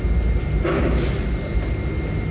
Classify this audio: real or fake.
real